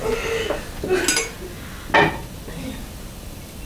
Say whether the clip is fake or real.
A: real